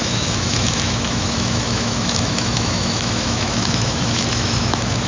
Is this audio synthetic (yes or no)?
yes